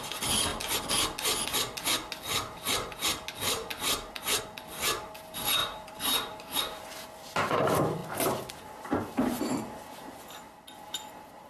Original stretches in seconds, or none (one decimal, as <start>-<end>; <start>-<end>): 0.0-5.6; 6.6-11.5